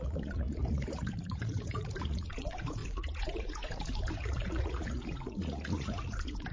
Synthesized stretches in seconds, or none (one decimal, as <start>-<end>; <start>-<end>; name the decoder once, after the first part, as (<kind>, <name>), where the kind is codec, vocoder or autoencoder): 0.0-6.5 (vocoder, Vocos)